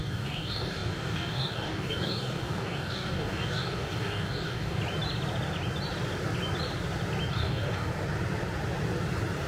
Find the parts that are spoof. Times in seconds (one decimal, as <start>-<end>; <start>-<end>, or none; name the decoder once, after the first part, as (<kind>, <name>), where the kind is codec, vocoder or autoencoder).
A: 0.0-4.8 (codec, DAC); 7.3-7.9